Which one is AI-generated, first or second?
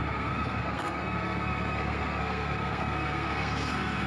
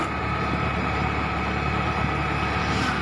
first